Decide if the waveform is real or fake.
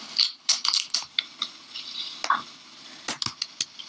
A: real